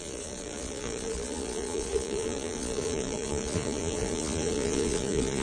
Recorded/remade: remade